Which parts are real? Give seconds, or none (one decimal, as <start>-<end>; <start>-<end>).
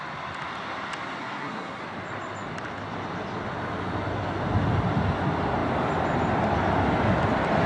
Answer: 0.0-1.2; 1.8-7.7